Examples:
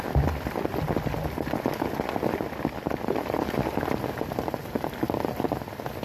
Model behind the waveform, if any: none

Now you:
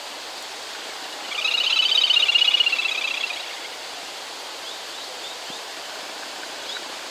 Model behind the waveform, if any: none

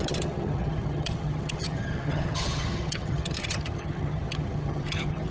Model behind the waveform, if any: vocoder, HiFi-GAN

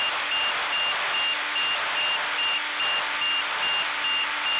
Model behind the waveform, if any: none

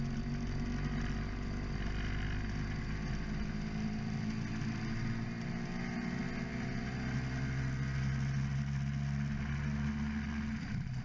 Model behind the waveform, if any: none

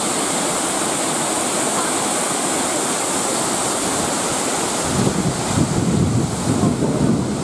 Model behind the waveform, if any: none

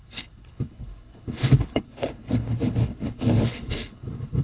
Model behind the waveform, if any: codec, HILCodec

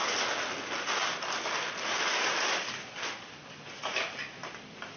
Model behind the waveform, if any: none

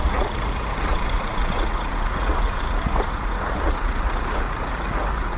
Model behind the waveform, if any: vocoder, Vocos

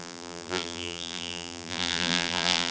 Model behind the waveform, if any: vocoder, BigVGAN v2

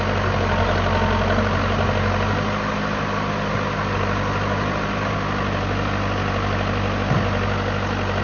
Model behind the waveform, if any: none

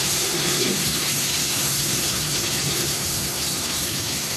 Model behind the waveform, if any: codec, SNAC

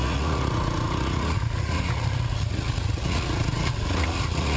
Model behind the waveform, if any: vocoder, Vocos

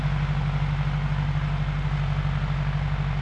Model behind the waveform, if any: none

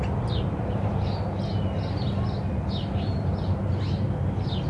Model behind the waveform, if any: none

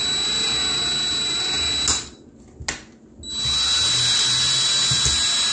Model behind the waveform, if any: none